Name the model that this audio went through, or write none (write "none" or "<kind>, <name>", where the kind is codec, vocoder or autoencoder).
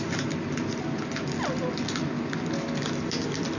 none